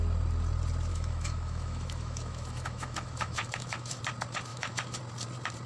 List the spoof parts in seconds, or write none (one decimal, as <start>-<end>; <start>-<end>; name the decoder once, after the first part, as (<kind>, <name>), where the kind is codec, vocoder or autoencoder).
0.9-4.0 (autoencoder, DAC-VAE); 4.5-5.0